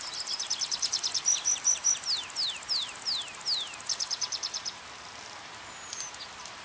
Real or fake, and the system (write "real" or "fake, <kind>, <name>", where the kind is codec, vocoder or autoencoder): real